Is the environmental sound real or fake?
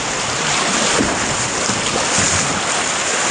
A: real